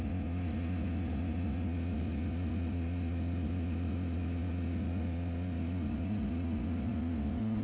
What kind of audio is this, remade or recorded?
remade